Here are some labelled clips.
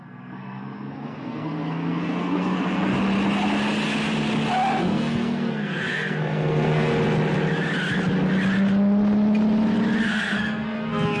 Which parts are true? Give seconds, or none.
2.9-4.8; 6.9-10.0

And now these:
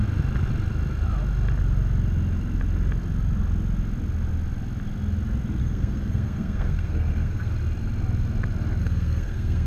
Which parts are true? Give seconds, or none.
0.0-5.6; 7.5-8.8

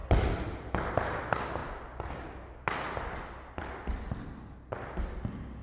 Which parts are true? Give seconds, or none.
0.0-5.6

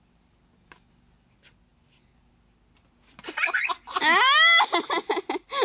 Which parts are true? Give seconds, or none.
0.0-5.6

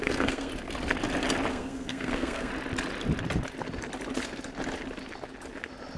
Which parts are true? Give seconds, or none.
0.5-1.5; 2.5-6.0